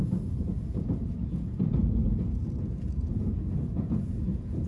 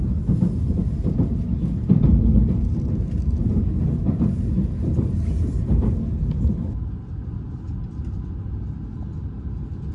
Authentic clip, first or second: second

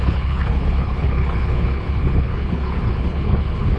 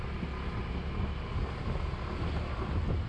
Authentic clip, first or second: second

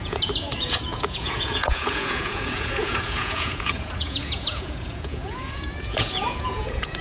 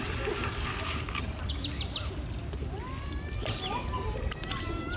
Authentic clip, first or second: second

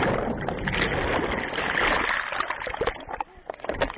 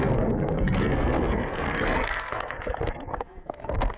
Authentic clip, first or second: first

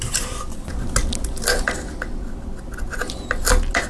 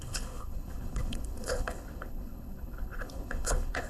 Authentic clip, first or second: first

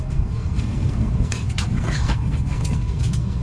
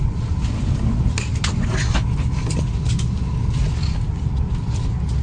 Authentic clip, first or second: second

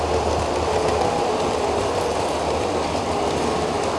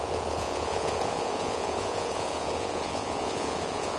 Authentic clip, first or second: first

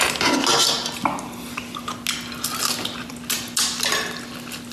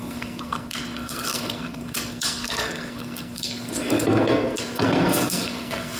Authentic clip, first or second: first